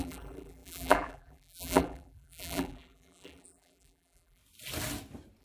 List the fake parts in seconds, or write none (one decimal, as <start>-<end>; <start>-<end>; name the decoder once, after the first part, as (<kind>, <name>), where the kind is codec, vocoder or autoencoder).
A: 0.0-4.4 (vocoder, BigVGAN v2)